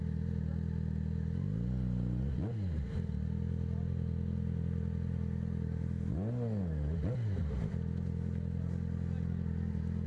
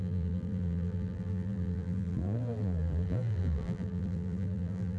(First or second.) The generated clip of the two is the second